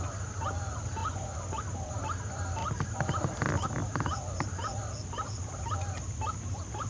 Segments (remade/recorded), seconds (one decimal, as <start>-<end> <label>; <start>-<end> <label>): 0.0-1.0 recorded; 1.0-1.6 remade; 1.6-6.9 recorded